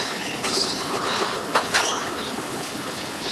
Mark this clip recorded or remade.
remade